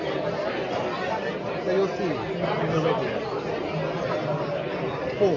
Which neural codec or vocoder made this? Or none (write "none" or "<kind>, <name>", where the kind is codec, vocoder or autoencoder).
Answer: none